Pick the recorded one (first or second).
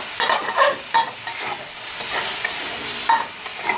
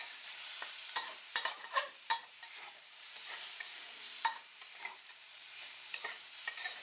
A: first